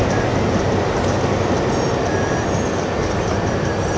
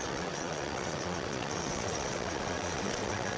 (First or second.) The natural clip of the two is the first